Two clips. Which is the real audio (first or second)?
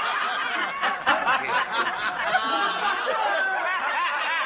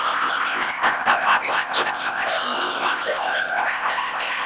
first